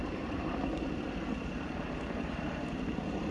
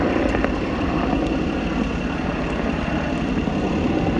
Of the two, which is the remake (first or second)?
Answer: first